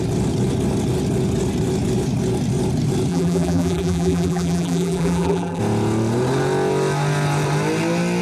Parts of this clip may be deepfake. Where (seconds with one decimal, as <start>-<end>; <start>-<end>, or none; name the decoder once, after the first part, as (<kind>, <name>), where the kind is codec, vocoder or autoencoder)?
3.1-5.6 (vocoder, BigVGAN v2)